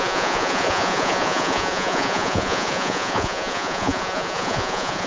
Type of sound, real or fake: fake